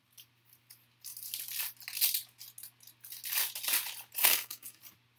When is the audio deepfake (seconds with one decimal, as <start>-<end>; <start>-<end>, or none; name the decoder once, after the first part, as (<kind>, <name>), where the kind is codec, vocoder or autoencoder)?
4.2-4.8 (codec, SNAC)